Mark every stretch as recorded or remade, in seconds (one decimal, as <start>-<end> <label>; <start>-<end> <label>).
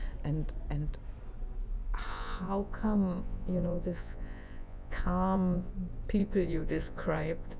0.0-2.1 recorded; 2.1-5.7 remade; 5.7-6.2 recorded; 6.2-7.6 remade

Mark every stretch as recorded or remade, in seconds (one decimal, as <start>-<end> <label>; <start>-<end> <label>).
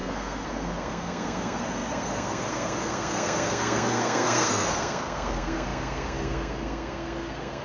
0.0-7.6 remade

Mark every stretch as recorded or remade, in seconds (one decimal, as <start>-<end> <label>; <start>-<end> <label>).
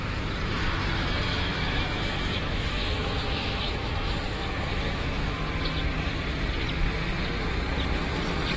0.0-1.3 recorded; 1.3-3.9 remade; 3.9-4.7 recorded; 4.7-5.4 remade; 5.4-8.6 recorded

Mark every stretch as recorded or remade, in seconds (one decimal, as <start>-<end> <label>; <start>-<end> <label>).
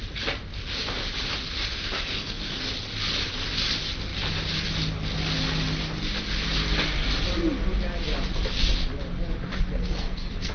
0.0-1.7 recorded; 1.7-2.6 remade; 2.6-9.5 recorded; 9.5-10.5 remade